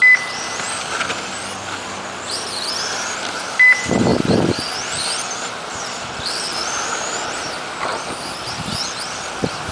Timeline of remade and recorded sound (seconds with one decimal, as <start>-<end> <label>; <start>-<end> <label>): 0.0-4.1 recorded; 4.1-4.6 remade; 4.6-6.6 recorded; 6.6-7.5 remade; 7.5-7.9 recorded; 7.9-8.7 remade; 8.7-9.7 recorded